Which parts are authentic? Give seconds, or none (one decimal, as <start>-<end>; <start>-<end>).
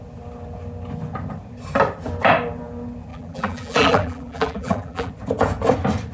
0.0-3.1; 5.1-6.1